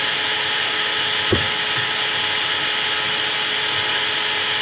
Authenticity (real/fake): real